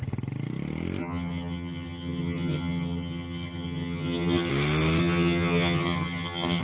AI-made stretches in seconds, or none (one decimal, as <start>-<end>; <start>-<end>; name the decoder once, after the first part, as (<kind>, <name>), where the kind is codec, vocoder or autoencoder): 1.0-4.5 (vocoder, HiFi-GAN); 5.0-6.6